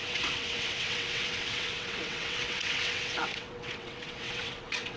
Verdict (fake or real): fake